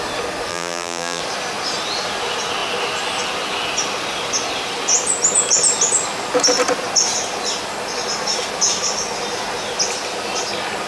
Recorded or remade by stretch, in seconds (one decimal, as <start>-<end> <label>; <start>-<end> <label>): 0.0-0.5 recorded; 0.5-1.2 remade; 1.2-10.9 recorded